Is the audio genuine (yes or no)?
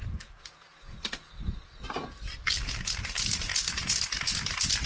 yes